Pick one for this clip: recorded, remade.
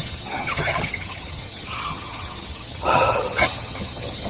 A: remade